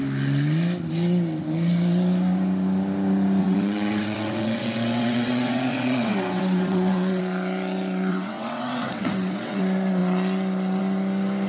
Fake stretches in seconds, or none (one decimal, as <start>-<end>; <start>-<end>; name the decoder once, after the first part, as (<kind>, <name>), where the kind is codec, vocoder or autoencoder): 3.4-7.2 (vocoder, WaveNeXt); 8.1-9.6